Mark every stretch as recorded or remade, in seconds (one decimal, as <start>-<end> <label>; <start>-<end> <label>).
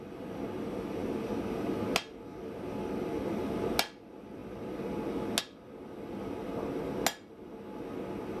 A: 0.0-8.4 recorded